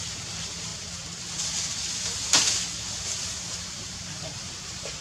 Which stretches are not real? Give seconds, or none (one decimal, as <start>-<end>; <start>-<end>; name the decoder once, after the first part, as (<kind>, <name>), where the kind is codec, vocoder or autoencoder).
0.0-0.7 (vocoder, BigVGAN v2); 3.5-5.0

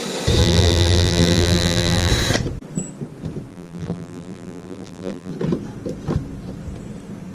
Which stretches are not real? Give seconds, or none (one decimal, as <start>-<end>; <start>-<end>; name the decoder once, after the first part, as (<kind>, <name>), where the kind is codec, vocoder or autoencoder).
0.4-2.1 (vocoder, BigVGAN v2); 3.5-5.3

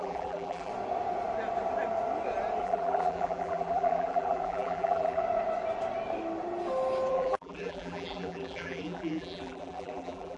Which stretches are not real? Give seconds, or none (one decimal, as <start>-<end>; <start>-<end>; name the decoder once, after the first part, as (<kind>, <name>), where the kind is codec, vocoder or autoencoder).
0.0-0.7 (vocoder, BigVGAN v2); 2.6-5.2; 7.1-10.4

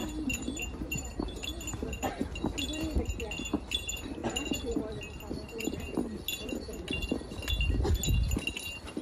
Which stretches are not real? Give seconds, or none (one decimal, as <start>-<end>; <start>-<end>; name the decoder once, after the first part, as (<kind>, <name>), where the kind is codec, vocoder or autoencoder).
0.6-2.2 (vocoder, BigVGAN v2); 3.5-4.2

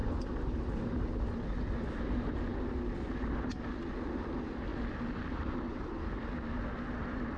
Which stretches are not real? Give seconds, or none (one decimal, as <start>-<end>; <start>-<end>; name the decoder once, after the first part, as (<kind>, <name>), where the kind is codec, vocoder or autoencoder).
none

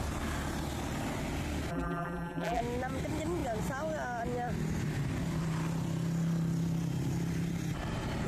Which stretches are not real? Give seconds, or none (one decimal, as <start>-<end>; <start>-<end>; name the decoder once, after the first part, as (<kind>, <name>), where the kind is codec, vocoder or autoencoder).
1.7-2.6 (vocoder, BigVGAN v2)

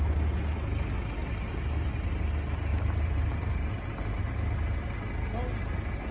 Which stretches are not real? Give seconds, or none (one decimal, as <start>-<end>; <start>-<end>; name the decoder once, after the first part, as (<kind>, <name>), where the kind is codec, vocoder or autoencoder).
1.2-1.9 (vocoder, BigVGAN v2); 2.7-4.2

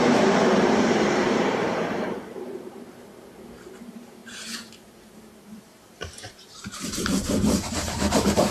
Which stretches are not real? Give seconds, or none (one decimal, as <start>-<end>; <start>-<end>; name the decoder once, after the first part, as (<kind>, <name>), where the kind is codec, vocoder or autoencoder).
0.0-8.5 (vocoder, BigVGAN v2)